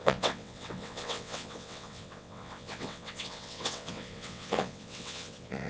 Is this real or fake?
fake